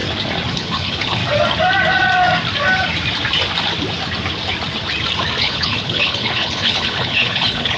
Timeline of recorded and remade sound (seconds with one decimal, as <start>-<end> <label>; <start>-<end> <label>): 0.0-0.5 recorded; 0.5-1.2 remade; 1.2-5.4 recorded; 5.4-7.8 remade